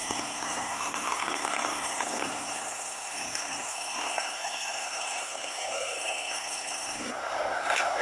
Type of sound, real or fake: fake